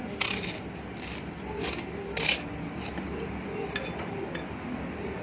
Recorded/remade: recorded